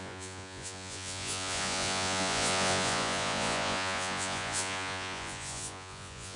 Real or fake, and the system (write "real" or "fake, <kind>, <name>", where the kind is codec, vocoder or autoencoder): fake, vocoder, Vocos